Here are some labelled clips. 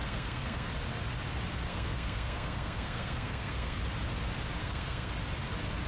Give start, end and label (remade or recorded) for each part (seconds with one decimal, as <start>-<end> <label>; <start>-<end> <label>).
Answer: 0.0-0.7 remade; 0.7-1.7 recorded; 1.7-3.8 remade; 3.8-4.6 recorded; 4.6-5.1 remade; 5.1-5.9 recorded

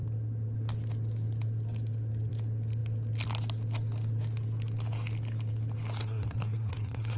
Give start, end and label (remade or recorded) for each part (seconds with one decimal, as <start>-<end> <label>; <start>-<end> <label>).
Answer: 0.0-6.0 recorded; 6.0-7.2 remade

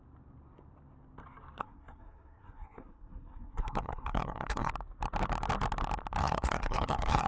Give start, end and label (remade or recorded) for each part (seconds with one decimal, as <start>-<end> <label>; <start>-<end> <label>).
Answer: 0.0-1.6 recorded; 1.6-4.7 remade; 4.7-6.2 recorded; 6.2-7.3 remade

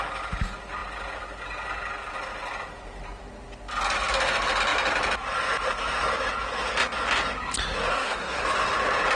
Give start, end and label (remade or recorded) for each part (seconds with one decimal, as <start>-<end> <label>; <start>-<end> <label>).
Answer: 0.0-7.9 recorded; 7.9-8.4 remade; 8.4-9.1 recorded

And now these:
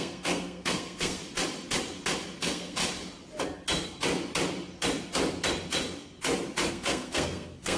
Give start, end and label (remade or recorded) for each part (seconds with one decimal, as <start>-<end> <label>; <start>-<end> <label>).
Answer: 0.0-1.2 remade; 1.2-2.4 recorded; 2.4-2.8 remade; 2.8-6.7 recorded; 6.7-7.8 remade

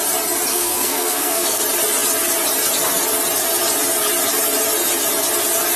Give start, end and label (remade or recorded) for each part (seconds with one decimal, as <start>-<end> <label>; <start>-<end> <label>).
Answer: 0.0-0.5 recorded; 0.5-1.6 remade; 1.6-5.8 recorded